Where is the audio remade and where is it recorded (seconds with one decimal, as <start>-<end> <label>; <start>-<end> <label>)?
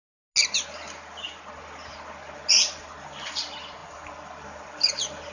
0.0-5.3 recorded